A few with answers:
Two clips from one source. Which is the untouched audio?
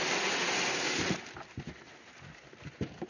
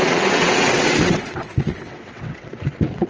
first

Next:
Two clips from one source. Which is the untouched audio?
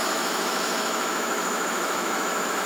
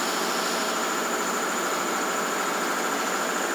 second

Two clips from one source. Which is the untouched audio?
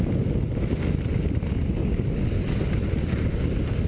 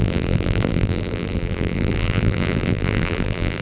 first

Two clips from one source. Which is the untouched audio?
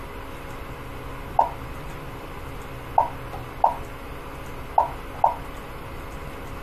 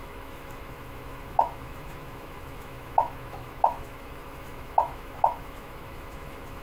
first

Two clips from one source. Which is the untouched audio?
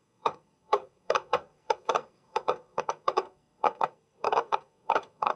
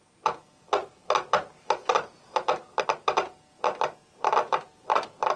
second